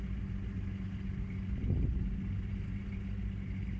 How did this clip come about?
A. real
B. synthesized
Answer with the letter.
A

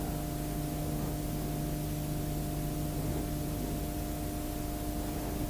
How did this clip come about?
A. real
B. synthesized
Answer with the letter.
A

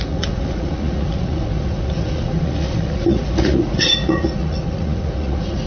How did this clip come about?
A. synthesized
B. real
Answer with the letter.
A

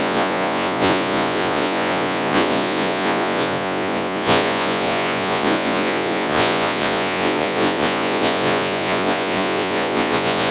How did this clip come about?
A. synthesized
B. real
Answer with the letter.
A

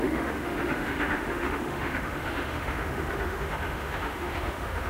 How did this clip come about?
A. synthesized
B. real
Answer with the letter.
A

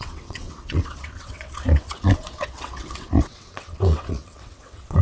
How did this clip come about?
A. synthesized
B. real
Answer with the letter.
A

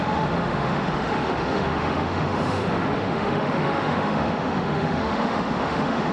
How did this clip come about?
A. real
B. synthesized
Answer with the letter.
B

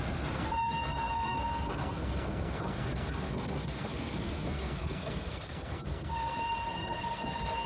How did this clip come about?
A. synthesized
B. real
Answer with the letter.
A